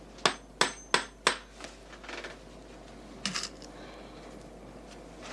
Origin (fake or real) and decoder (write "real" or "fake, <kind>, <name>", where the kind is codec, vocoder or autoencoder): real